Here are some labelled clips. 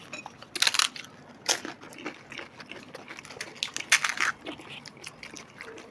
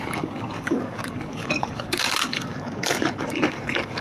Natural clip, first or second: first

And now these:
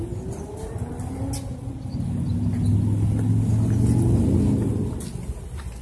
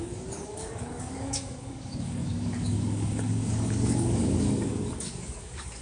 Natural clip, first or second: first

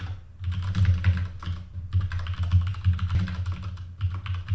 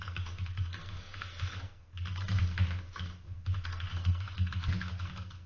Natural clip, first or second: first